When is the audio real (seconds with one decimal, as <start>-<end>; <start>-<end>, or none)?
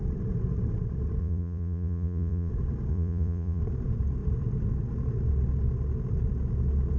0.0-1.2; 2.5-2.9; 3.6-7.0